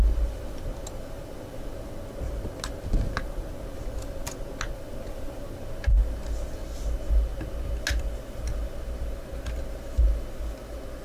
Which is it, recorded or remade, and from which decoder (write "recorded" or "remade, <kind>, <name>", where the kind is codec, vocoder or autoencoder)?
recorded